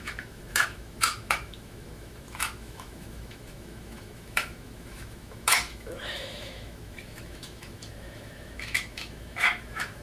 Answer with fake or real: fake